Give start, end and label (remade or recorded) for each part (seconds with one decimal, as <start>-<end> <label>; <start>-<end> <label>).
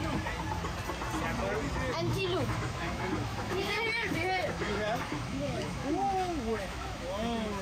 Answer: 0.0-2.1 recorded; 2.1-7.6 remade